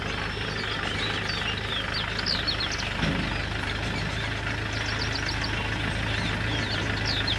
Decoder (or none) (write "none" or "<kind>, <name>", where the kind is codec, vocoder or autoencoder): none